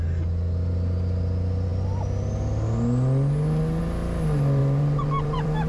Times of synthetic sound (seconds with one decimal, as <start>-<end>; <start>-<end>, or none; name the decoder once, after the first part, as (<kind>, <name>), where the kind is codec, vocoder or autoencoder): 4.6-5.7 (vocoder, BigVGAN v2)